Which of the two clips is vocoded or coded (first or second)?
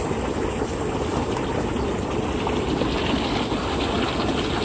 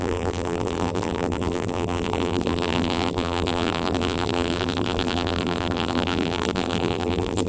second